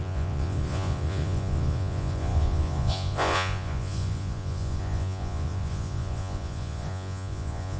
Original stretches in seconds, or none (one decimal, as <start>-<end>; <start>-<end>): none